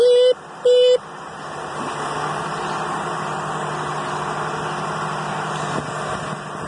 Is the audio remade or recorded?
recorded